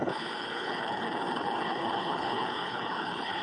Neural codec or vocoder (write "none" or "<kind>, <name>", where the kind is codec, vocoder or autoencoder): codec, HILCodec